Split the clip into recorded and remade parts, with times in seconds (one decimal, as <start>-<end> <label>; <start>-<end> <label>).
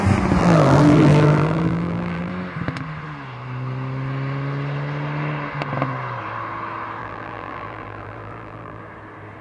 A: 0.0-0.4 recorded; 0.4-2.3 remade; 2.3-7.0 recorded; 7.0-8.8 remade; 8.8-9.4 recorded